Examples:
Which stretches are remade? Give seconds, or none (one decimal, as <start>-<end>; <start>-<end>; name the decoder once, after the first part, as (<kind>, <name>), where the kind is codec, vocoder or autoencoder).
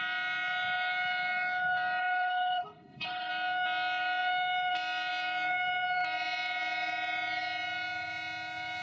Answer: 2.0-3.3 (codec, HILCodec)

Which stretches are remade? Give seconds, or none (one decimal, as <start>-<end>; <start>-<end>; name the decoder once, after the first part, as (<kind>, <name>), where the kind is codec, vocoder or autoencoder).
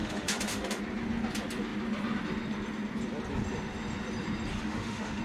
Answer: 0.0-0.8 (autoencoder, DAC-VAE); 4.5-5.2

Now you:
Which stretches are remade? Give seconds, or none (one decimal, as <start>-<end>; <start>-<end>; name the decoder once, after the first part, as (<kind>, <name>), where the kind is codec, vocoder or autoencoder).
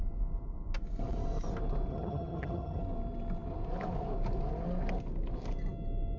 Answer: 1.9-2.8 (vocoder, HiFi-GAN)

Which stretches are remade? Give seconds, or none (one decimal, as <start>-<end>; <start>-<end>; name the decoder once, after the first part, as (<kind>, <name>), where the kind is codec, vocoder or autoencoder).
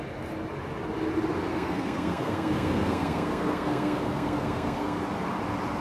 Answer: 1.5-5.0 (codec, SNAC)